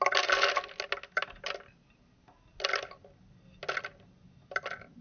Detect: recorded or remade recorded